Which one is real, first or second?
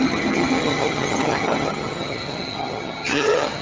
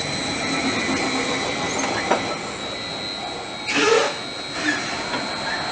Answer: second